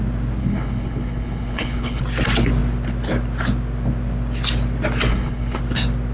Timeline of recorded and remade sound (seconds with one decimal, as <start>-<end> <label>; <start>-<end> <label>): 0.0-0.4 recorded; 0.4-2.0 remade; 2.0-5.1 recorded; 5.1-5.6 remade; 5.6-6.1 recorded